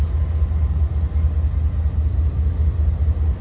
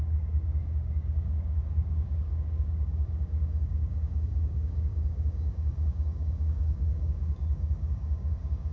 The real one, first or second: first